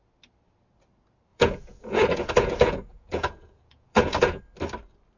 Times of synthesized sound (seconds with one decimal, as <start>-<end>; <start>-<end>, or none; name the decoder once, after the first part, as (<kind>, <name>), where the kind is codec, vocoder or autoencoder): 1.3-4.4 (vocoder, Vocos)